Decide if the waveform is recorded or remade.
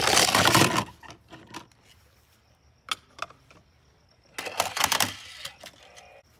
recorded